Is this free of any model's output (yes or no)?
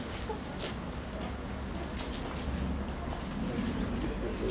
yes